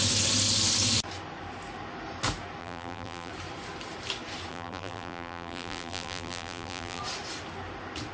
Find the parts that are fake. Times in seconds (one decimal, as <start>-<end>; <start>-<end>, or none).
2.6-3.3; 4.5-7.0